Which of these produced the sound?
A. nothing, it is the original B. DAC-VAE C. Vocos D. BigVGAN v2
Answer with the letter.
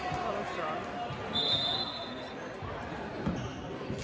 A